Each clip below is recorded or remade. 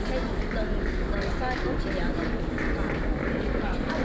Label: recorded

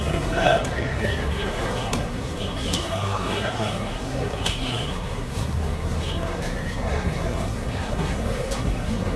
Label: remade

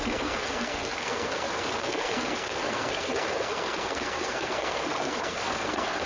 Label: remade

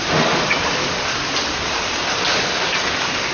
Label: recorded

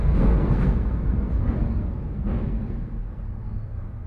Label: remade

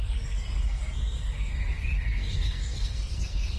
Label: remade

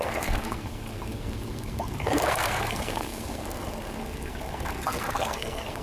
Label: remade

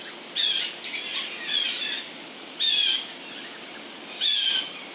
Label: recorded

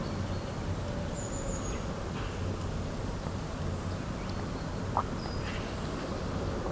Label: recorded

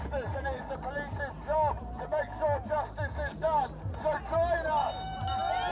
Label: recorded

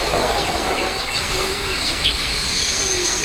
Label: remade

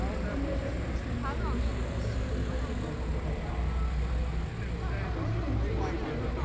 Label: recorded